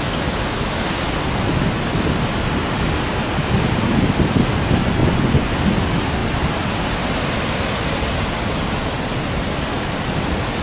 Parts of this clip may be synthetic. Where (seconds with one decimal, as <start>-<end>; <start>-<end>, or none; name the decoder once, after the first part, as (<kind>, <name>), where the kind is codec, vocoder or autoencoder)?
5.0-5.5 (vocoder, Vocos)